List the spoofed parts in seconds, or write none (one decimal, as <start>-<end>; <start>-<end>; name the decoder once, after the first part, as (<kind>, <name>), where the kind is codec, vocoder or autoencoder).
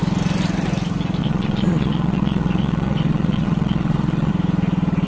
1.2-4.3 (vocoder, Vocos)